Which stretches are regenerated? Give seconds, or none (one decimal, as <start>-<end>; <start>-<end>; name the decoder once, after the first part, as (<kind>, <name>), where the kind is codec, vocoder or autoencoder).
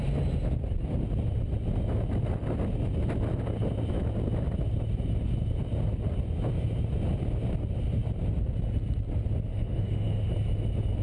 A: 9.5-10.3 (autoencoder, DAC-VAE)